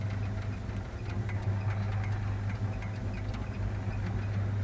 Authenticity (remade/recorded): recorded